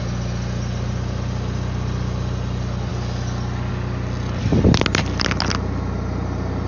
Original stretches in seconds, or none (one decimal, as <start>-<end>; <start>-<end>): 0.0-6.7

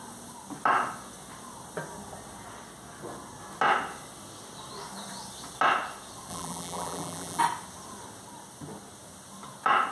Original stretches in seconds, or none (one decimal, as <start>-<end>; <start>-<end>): 0.0-6.3; 7.4-9.9

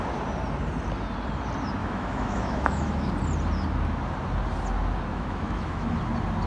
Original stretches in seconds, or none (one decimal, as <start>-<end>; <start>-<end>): 0.0-1.8; 3.1-5.1; 6.0-6.5

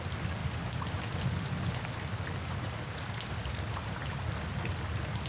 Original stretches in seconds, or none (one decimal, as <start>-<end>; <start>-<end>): 0.4-1.8

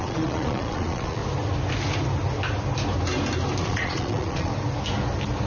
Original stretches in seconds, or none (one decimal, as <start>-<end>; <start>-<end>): 1.2-3.6; 4.5-5.5

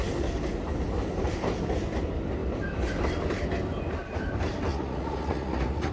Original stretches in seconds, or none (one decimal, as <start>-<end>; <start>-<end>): 0.0-4.7